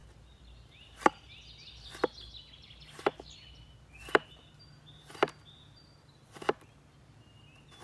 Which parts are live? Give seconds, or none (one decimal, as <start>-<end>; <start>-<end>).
0.0-7.8